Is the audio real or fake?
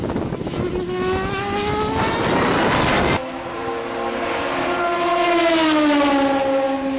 real